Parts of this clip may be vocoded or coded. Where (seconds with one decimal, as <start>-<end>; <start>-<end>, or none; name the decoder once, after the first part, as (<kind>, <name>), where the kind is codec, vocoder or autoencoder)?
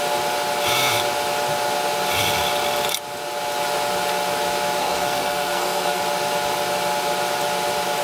4.8-6.0 (codec, SNAC)